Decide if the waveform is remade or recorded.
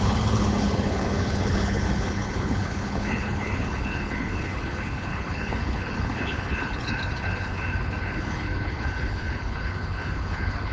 remade